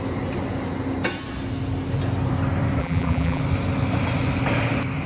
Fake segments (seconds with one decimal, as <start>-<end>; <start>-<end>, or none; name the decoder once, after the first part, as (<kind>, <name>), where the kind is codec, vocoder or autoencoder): 2.8-3.4 (vocoder, BigVGAN v2)